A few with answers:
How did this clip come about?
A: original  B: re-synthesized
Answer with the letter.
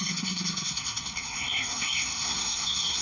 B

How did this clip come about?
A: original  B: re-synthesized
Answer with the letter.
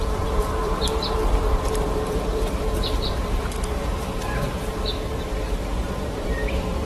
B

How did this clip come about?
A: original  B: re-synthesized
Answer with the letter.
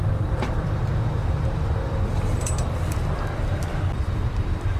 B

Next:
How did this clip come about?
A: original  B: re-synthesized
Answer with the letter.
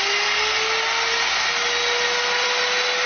A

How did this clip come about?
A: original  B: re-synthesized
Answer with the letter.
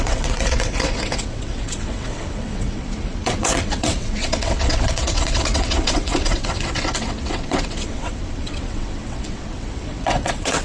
B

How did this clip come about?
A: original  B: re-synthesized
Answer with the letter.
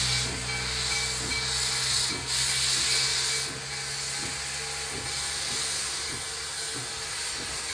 A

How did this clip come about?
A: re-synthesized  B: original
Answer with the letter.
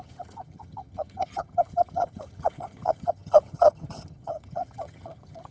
A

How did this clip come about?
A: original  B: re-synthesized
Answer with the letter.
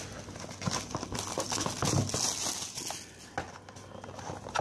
A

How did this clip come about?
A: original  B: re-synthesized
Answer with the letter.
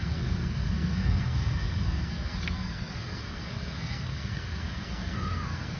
B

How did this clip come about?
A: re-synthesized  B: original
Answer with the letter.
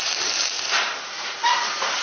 A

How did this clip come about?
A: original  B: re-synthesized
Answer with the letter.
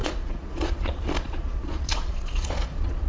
B